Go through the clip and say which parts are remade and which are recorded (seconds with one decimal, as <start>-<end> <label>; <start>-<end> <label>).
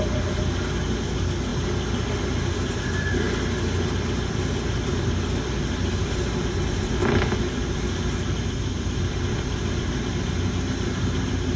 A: 0.0-11.6 recorded